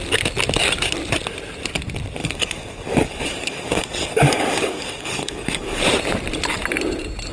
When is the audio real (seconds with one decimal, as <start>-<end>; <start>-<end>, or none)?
0.0-2.2; 5.8-7.3